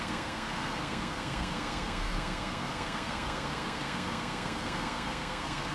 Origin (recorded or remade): remade